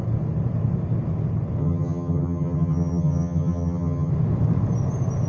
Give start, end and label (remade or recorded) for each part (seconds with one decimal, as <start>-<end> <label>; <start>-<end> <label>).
0.0-1.6 recorded; 1.6-4.1 remade; 4.1-5.3 recorded